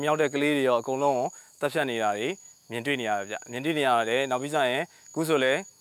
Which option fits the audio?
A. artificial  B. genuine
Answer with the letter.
A